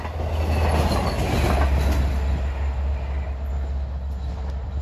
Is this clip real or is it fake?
real